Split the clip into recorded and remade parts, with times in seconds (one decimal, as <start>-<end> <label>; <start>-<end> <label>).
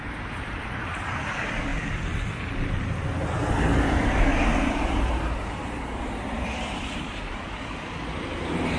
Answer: 0.0-1.7 remade; 1.7-4.7 recorded; 4.7-8.8 remade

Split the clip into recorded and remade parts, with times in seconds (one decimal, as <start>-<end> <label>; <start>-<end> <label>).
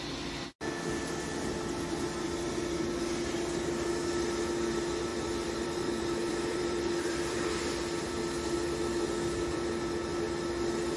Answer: 0.0-5.1 recorded; 5.1-7.7 remade; 7.7-11.0 recorded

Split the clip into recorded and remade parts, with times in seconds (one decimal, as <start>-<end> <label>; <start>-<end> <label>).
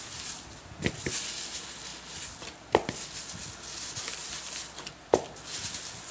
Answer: 0.0-6.1 remade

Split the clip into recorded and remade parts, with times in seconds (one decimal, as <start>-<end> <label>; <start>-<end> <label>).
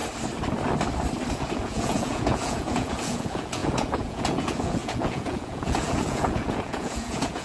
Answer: 0.0-1.3 recorded; 1.3-7.4 remade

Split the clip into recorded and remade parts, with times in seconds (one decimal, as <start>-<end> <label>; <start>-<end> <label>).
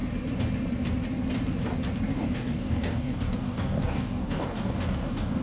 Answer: 0.0-2.1 recorded; 2.1-5.4 remade